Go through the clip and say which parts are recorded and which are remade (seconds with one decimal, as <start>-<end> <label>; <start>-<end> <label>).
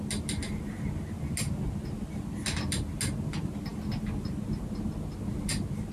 0.0-5.9 recorded